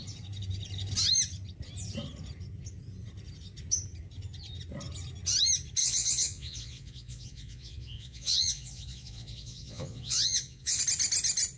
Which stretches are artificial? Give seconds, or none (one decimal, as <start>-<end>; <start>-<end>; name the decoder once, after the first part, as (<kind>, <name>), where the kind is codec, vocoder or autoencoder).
5.8-10.8 (vocoder, Vocos)